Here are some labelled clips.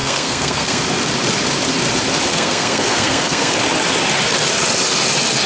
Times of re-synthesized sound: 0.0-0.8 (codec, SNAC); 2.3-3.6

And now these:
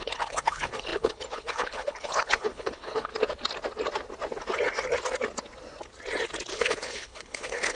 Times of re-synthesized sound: 0.0-3.1 (codec, HILCodec); 6.5-7.8

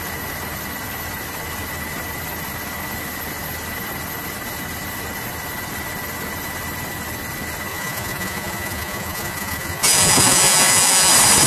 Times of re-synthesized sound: 7.7-11.1 (vocoder, Vocos)

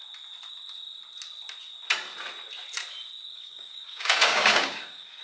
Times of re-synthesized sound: 3.3-5.2 (codec, DAC)

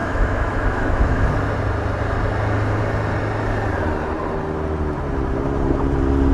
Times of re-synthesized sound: 0.0-1.3 (autoencoder, DAC-VAE)